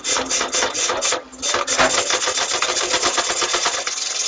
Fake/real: real